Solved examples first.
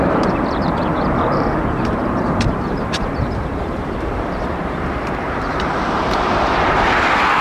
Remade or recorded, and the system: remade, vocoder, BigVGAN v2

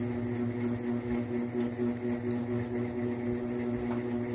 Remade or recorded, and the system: recorded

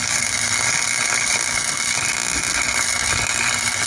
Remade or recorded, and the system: recorded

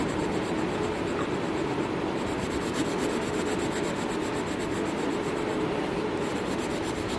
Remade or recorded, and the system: recorded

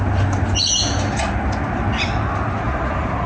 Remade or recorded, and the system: recorded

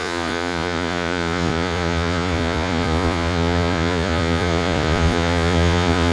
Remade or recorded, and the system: remade, vocoder, Vocos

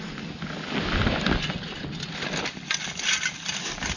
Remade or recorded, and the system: recorded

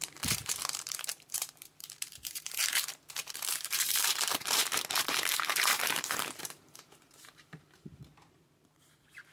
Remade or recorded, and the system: remade, vocoder, BigVGAN v2